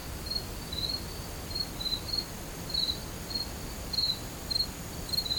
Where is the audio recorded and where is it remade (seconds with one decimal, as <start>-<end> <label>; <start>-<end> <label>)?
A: 0.0-5.4 recorded